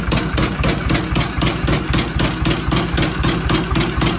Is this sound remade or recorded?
recorded